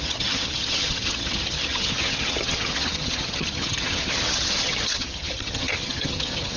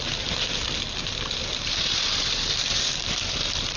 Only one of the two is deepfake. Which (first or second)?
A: first